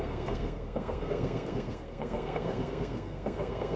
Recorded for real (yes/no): no